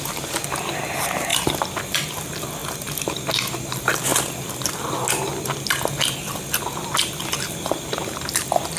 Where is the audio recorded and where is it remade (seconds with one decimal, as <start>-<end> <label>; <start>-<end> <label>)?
0.0-8.8 recorded